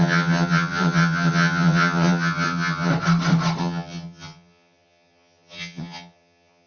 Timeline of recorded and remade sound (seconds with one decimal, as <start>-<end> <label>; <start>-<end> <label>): 0.0-2.9 remade; 2.9-3.6 recorded; 3.6-6.7 remade